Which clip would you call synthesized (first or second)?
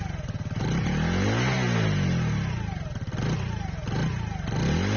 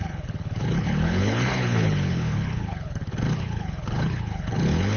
second